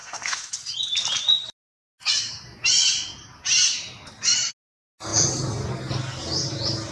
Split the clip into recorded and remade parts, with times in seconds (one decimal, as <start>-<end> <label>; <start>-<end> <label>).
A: 0.0-0.5 remade; 0.5-6.9 recorded